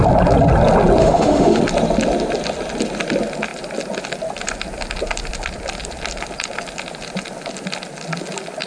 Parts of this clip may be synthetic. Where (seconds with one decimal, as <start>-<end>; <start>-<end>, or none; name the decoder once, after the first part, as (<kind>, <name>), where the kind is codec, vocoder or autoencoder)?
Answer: 1.0-1.6 (autoencoder, DAC-VAE)